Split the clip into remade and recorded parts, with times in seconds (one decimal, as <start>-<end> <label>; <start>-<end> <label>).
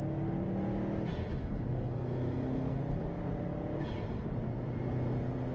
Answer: 0.0-1.4 recorded; 1.4-2.8 remade; 2.8-5.5 recorded